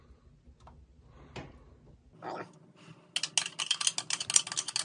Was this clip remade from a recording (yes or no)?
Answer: no